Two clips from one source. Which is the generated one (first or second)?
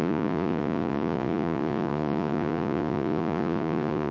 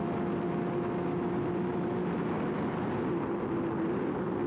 first